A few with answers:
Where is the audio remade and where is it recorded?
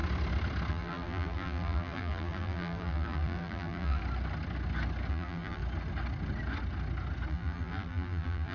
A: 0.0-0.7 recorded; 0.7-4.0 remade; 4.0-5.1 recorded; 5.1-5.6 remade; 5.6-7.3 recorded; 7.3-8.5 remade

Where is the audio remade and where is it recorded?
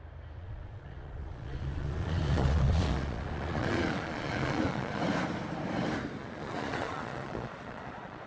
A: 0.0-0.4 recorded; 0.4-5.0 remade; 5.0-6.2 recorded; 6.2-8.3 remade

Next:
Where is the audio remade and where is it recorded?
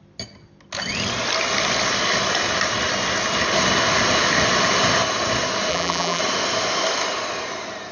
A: 0.0-5.7 recorded; 5.7-6.2 remade; 6.2-7.9 recorded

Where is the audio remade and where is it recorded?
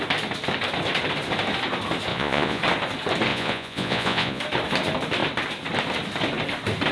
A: 0.0-2.1 recorded; 2.1-2.6 remade; 2.6-3.3 recorded; 3.3-4.4 remade; 4.4-6.9 recorded